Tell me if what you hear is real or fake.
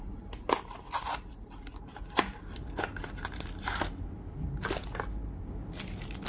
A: real